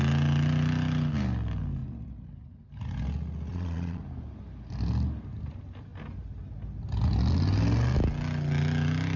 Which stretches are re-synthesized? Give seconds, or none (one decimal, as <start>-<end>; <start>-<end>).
3.5-4.0